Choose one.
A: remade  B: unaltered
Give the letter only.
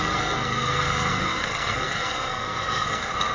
A